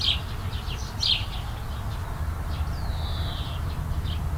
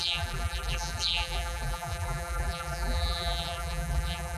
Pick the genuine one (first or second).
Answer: first